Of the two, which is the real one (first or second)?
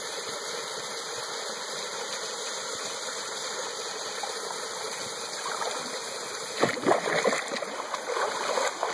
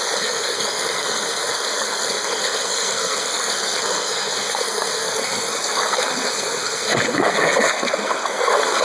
first